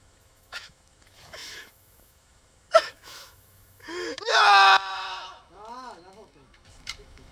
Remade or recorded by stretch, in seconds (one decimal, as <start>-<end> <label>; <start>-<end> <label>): 0.0-7.3 remade